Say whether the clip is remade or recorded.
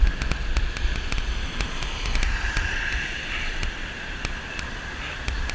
remade